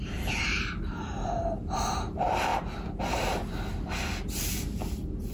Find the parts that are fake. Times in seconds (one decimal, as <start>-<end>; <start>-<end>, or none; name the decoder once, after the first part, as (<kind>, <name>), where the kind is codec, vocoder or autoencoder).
0.0-3.4 (vocoder, BigVGAN v2)

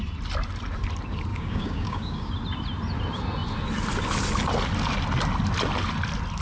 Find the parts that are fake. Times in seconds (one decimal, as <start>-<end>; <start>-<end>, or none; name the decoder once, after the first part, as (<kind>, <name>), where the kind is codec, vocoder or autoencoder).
1.3-2.3 (codec, DAC)

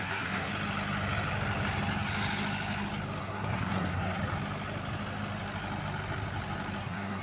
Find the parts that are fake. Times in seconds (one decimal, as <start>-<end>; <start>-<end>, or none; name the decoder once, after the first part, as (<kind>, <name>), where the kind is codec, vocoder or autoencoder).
0.0-0.5 (codec, SNAC); 3.2-4.2; 6.8-7.2